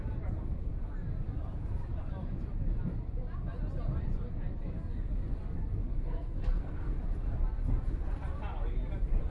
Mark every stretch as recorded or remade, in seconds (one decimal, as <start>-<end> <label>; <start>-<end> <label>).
0.0-5.8 recorded; 5.8-7.0 remade; 7.0-9.3 recorded